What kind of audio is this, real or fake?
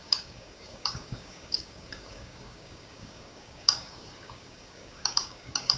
fake